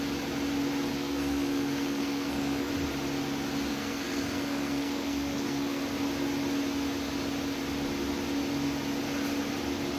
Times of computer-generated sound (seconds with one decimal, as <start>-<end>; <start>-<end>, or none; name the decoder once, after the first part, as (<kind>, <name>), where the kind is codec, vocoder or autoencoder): 0.9-2.7 (codec, SNAC); 3.7-5.8